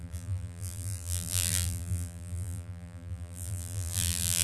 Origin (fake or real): fake